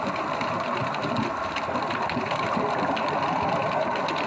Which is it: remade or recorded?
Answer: recorded